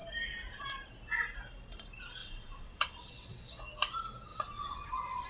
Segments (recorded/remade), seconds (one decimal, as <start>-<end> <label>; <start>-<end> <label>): 0.0-2.2 recorded; 2.2-3.6 remade; 3.6-4.3 recorded; 4.3-5.3 remade